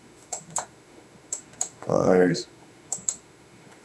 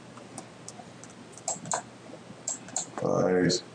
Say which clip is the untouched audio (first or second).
second